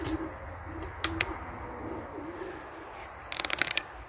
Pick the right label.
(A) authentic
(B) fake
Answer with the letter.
A